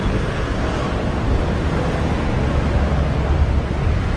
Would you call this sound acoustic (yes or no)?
yes